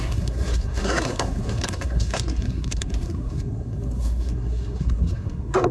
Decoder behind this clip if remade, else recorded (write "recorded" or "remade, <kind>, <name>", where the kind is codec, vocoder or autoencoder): remade, codec, SNAC